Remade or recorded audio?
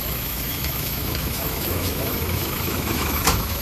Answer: remade